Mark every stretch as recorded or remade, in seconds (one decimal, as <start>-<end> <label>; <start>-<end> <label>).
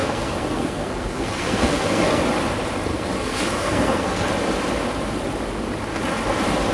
0.0-2.2 remade; 2.2-2.9 recorded; 2.9-4.3 remade; 4.3-6.7 recorded